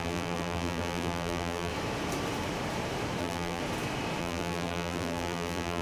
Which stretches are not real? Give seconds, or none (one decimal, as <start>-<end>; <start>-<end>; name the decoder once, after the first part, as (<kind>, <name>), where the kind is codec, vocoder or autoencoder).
0.0-1.7 (vocoder, BigVGAN v2); 3.2-3.6; 4.2-5.8